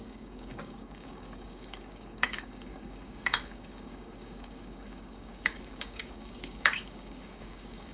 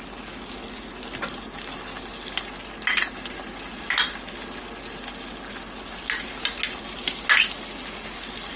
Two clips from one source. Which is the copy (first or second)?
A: first